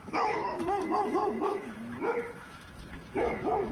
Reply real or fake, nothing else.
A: fake